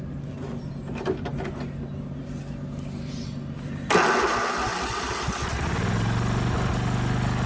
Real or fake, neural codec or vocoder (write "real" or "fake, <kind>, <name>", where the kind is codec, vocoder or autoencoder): real